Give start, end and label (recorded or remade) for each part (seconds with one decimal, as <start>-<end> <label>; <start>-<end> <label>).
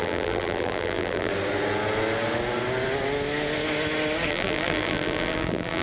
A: 0.0-1.3 remade; 1.3-4.3 recorded; 4.3-5.8 remade